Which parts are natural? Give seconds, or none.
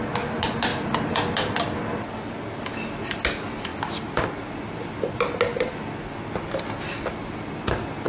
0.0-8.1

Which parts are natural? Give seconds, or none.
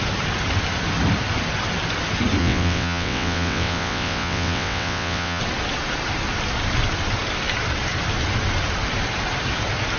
0.0-2.4; 5.4-10.0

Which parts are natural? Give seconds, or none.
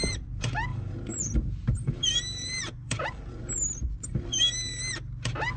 0.0-0.7; 3.5-5.6